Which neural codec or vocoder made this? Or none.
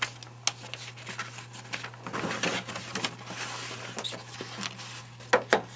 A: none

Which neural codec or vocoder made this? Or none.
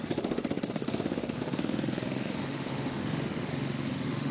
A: autoencoder, DAC-VAE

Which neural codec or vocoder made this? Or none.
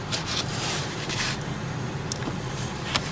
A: vocoder, BigVGAN v2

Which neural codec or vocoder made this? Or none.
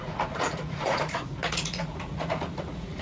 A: vocoder, Vocos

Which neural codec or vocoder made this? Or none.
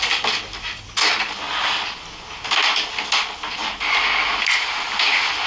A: none